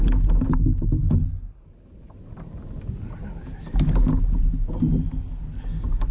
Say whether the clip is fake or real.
real